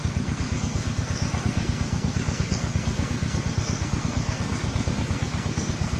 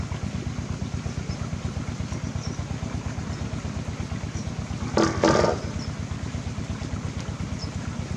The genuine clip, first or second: second